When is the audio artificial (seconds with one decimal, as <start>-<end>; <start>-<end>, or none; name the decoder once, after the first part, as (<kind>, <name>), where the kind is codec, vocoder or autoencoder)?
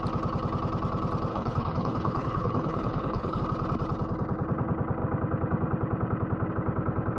1.3-3.4 (codec, HILCodec)